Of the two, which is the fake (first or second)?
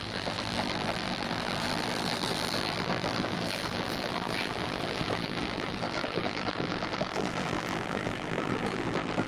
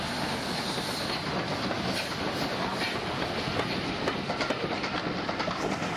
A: first